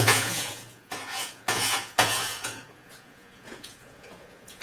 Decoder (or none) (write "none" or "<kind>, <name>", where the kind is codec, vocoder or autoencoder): vocoder, Vocos